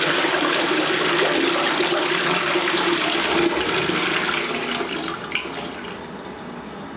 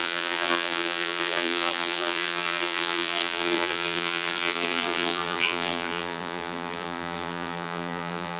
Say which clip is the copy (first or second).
second